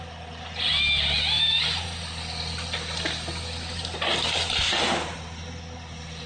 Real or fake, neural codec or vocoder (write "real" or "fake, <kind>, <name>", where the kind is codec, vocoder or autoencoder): real